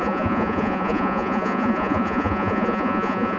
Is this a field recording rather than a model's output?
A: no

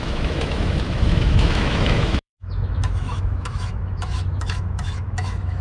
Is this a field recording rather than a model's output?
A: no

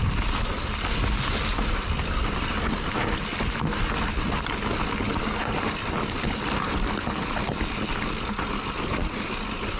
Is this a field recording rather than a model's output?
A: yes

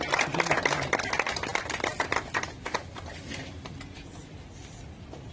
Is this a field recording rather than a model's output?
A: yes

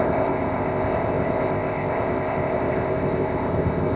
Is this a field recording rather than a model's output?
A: no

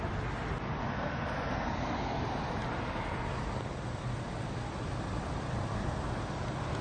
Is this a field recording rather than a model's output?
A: yes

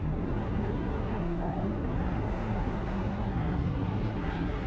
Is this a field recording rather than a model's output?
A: no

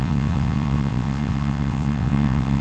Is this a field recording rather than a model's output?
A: no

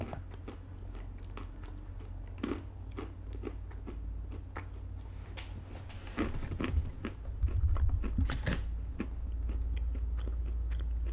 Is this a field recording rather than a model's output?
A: yes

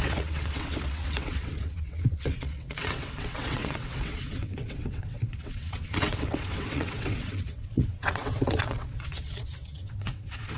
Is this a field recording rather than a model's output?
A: no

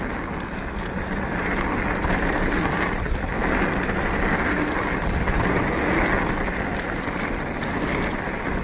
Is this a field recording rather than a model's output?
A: yes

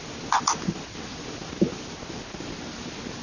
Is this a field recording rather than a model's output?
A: yes